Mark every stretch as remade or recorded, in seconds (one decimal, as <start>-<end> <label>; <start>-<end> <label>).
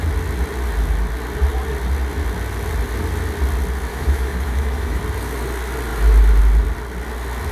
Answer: 0.0-3.9 recorded; 3.9-5.0 remade; 5.0-7.5 recorded